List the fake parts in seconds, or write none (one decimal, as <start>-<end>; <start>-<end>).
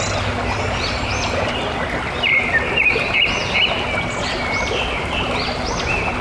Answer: none